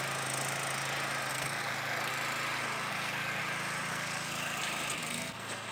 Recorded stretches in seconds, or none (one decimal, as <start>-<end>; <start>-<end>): 0.0-1.3; 2.1-2.9; 3.4-3.9; 4.6-5.0